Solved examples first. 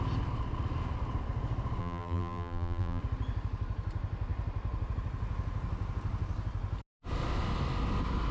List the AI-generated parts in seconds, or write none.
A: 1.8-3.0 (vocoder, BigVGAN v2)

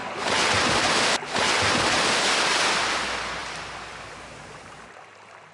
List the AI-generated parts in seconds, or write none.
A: 0.0-3.0 (vocoder, BigVGAN v2); 3.4-4.3

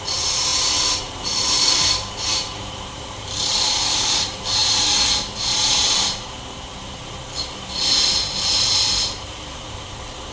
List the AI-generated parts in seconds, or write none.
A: 0.0-10.3 (vocoder, BigVGAN v2)

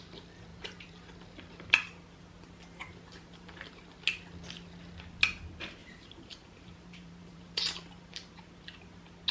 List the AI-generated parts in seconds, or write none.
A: 0.5-1.7 (vocoder, BigVGAN v2); 2.8-3.8; 5.8-8.4

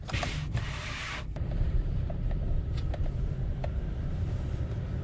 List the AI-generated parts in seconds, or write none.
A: 1.0-1.7 (vocoder, BigVGAN v2)

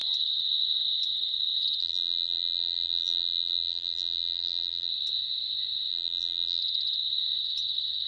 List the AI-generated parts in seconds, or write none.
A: 1.8-4.9 (vocoder, BigVGAN v2); 5.9-6.6

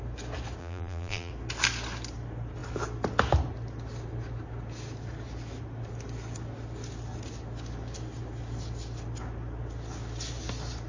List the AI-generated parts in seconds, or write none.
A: 0.6-1.3 (vocoder, BigVGAN v2)